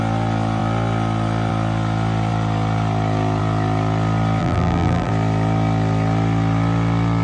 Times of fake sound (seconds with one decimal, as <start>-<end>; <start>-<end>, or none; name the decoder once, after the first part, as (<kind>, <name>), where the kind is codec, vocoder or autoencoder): 4.4-5.1 (vocoder, BigVGAN v2)